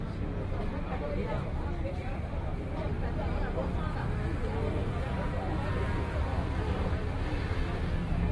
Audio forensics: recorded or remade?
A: recorded